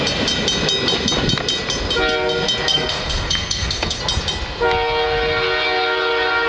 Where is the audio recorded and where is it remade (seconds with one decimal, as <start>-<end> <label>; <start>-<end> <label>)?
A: 0.0-2.7 recorded; 2.7-4.0 remade; 4.0-6.5 recorded